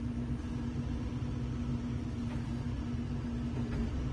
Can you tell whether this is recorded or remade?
recorded